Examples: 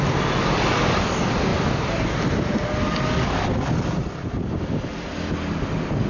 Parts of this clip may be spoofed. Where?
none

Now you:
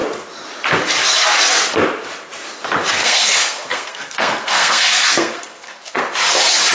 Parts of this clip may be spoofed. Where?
3.0-6.0 (codec, SNAC)

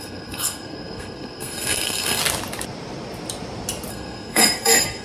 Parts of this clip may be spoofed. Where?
0.0-2.2 (codec, SNAC); 3.9-5.0

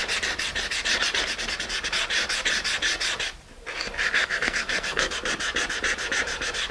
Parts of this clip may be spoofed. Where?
4.2-5.1 (codec, SNAC)

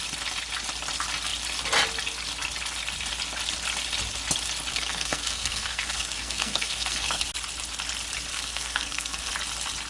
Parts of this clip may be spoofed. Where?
4.7-7.2 (codec, SNAC); 8.3-9.3

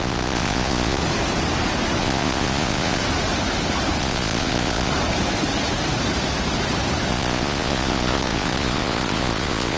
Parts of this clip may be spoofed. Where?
0.0-1.0 (vocoder, Vocos); 2.0-3.0; 4.0-4.9; 7.1-9.8